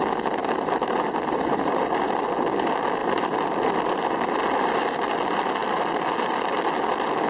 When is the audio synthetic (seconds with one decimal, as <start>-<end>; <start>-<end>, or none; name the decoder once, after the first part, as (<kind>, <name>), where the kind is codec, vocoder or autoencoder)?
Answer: 0.4-2.3 (vocoder, BigVGAN v2); 5.6-6.1